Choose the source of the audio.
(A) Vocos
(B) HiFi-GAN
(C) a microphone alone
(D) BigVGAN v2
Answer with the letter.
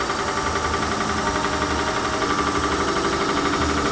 C